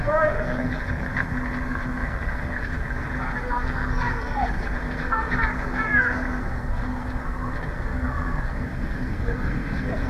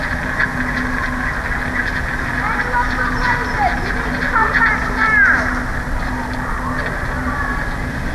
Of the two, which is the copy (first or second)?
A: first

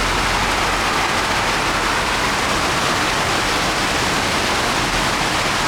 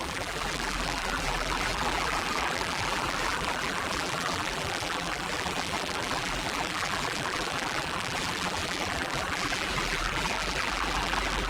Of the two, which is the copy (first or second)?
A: second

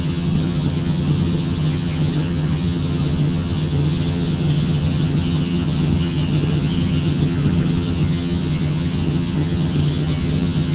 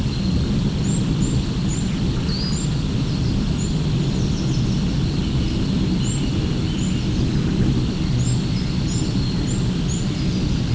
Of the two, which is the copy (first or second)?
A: first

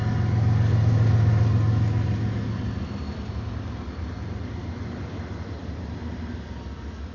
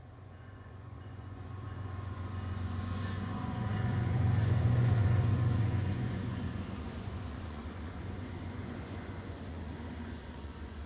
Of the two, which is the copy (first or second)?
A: second